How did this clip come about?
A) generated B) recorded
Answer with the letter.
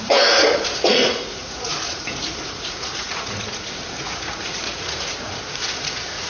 A